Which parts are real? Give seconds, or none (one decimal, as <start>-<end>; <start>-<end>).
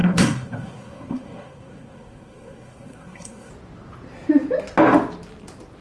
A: 3.5-5.8